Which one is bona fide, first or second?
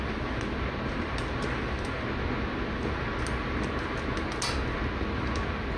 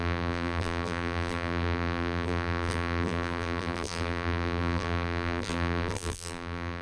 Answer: first